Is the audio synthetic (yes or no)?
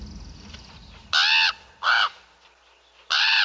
no